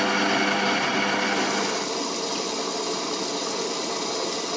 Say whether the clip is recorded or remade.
recorded